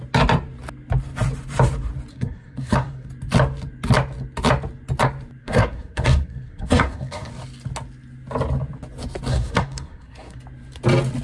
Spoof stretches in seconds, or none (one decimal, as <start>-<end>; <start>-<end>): 2.1-3.1; 5.4-7.3; 9.3-10.4